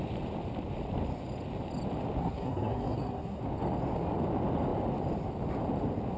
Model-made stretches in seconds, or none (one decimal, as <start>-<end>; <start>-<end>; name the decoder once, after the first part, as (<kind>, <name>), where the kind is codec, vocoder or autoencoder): 2.2-3.4 (codec, SNAC)